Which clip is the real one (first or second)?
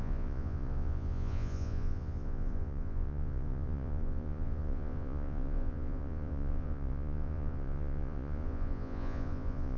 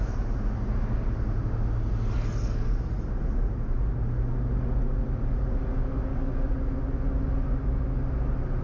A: second